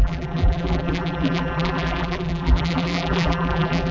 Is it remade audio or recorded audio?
remade